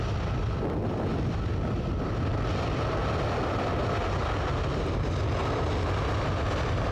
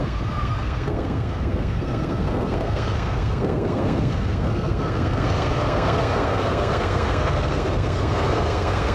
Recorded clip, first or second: first